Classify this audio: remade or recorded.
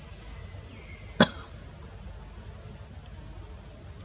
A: recorded